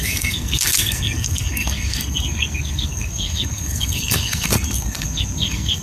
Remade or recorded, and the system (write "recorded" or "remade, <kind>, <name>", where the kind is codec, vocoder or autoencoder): remade, codec, SNAC